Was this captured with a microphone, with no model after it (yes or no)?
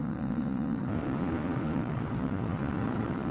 no